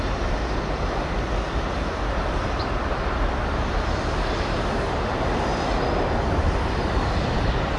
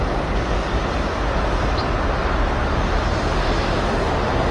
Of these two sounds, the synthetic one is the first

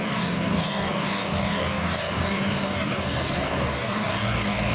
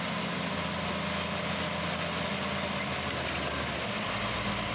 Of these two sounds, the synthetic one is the first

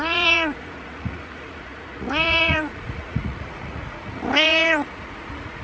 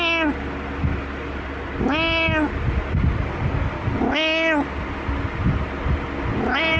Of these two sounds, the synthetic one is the first